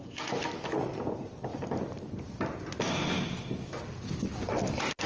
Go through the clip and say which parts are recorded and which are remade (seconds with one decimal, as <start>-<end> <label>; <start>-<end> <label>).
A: 0.0-5.1 recorded